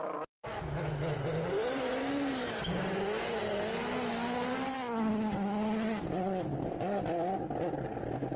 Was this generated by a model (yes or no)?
no